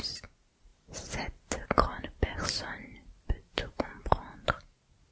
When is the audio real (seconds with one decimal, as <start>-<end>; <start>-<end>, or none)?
0.0-3.0; 3.9-5.1